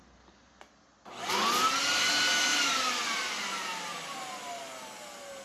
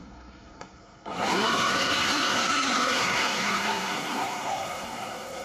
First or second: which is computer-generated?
second